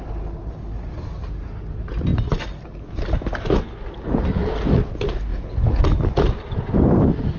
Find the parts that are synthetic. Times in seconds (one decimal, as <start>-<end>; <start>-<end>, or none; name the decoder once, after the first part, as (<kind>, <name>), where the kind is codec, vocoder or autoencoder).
5.3-5.8 (vocoder, Vocos)